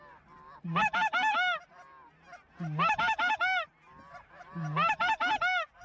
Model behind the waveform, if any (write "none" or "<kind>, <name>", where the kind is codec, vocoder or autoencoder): none